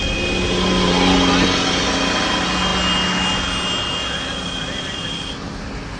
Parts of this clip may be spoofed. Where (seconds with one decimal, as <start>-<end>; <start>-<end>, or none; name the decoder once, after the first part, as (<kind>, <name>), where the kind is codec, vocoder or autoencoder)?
none